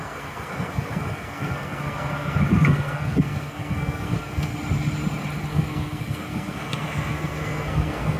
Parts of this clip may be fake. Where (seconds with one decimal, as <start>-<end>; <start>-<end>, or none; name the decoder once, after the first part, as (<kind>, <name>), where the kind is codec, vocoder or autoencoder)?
0.0-4.5 (codec, SNAC); 5.5-8.2